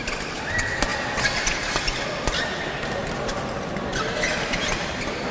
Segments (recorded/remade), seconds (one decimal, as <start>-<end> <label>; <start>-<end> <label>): 0.0-5.3 recorded